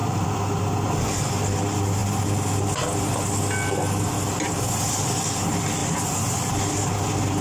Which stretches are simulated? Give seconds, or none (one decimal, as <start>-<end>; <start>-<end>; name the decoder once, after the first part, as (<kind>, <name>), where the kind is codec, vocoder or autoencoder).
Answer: 0.0-0.6 (vocoder, BigVGAN v2); 5.8-6.5